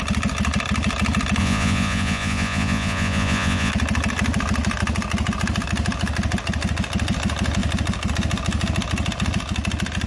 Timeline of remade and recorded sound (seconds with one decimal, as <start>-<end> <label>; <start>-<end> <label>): 0.0-1.4 recorded; 1.4-3.7 remade; 3.7-10.1 recorded